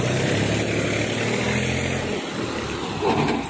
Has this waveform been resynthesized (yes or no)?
no